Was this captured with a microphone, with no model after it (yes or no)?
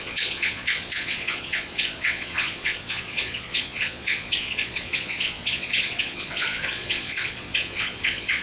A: no